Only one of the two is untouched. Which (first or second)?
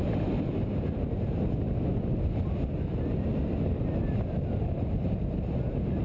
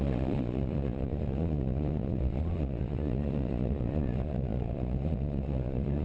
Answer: first